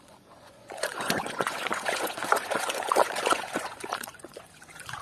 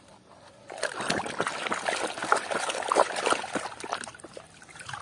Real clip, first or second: second